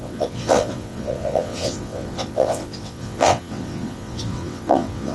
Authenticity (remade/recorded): remade